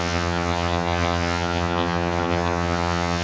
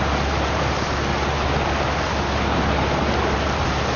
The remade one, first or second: first